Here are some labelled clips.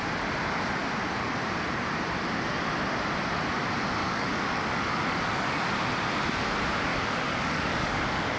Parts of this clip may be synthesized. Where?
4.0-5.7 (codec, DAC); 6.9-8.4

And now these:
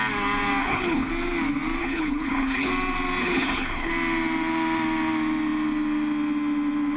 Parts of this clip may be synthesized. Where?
0.6-1.1 (codec, HILCodec); 1.8-2.7; 3.2-3.9

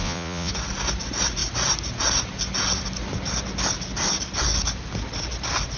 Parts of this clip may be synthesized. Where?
0.0-0.5 (vocoder, Vocos)